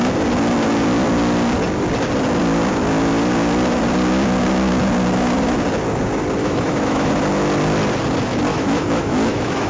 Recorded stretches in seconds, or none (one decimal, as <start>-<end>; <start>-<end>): 0.0-6.4; 7.1-8.5